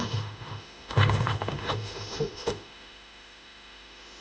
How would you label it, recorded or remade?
remade